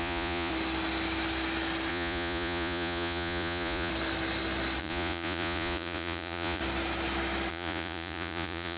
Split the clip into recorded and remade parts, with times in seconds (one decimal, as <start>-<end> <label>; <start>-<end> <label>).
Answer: 0.0-0.5 remade; 0.5-1.9 recorded; 1.9-3.9 remade; 3.9-4.8 recorded; 4.8-6.6 remade; 6.6-7.5 recorded; 7.5-8.8 remade